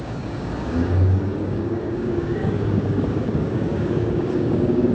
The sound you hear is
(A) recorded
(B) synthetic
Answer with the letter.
B